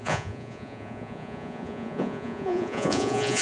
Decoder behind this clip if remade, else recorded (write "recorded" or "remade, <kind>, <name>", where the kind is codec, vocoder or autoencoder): remade, vocoder, Vocos